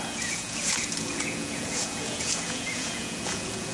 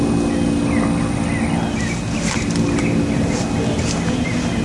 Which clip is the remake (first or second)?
first